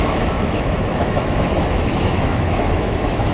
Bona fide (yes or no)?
no